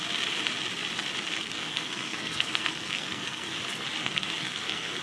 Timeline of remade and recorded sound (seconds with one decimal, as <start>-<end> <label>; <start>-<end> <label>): 0.0-1.4 recorded; 1.4-3.5 remade; 3.5-4.0 recorded; 4.0-5.0 remade